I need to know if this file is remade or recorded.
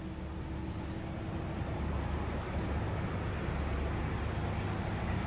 recorded